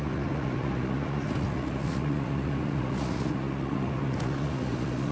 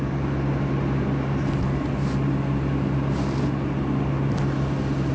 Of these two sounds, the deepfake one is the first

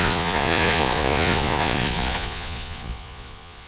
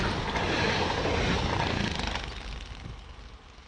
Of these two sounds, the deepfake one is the first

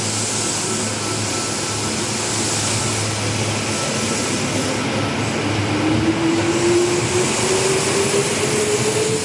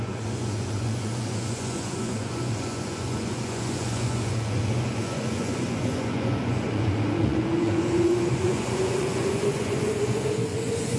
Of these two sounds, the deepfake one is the second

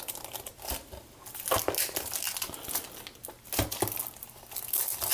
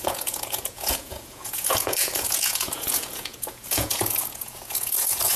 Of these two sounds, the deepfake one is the second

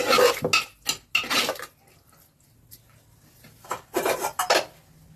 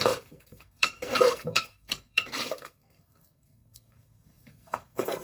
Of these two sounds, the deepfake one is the second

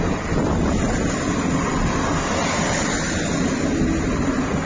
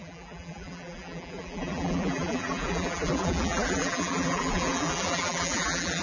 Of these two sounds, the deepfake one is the second